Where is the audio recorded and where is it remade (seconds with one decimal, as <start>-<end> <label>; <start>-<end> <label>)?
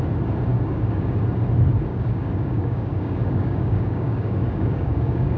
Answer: 0.0-0.5 recorded; 0.5-1.2 remade; 1.2-1.9 recorded; 1.9-5.4 remade